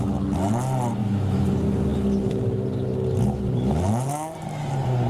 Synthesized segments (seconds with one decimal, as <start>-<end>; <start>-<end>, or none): 1.0-1.5